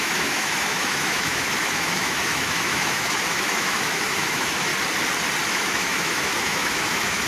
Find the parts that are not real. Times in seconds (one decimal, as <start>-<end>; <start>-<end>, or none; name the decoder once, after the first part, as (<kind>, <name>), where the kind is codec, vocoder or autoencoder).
0.0-4.7 (autoencoder, DAC-VAE); 5.5-7.3